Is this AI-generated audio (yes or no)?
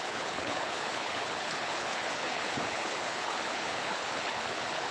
yes